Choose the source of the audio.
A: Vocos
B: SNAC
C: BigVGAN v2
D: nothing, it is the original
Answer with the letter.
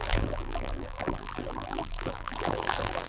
C